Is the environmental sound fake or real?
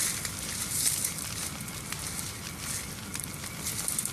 real